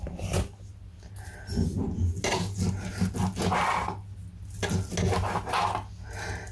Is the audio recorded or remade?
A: recorded